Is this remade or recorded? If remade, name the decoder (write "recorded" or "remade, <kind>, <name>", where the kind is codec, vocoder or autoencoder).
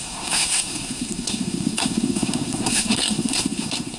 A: remade, codec, SNAC